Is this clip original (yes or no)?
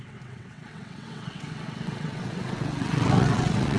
no